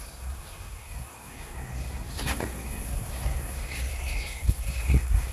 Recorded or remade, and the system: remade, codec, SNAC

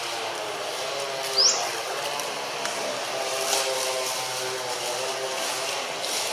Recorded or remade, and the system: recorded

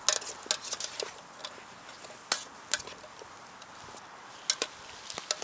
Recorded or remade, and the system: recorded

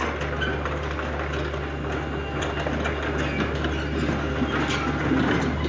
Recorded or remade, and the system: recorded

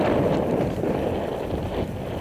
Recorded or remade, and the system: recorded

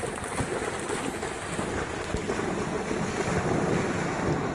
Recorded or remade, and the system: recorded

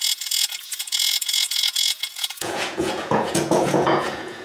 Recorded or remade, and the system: remade, vocoder, Vocos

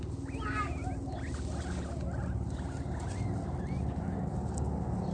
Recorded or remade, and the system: recorded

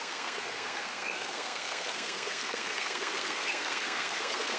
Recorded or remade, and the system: remade, codec, SNAC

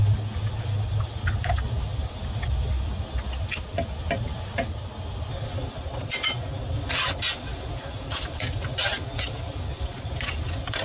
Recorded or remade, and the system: recorded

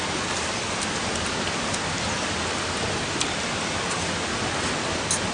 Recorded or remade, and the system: recorded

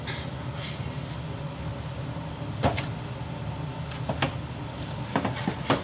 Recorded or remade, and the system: recorded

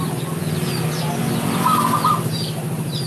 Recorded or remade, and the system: recorded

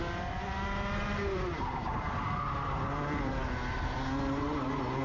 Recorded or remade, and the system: recorded